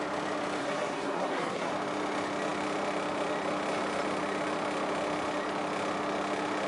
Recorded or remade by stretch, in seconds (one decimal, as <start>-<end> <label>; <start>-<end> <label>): 0.0-0.6 recorded; 0.6-1.7 remade; 1.7-6.7 recorded